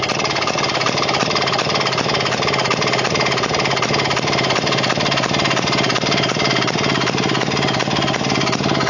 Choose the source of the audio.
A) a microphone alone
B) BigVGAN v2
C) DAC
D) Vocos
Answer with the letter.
A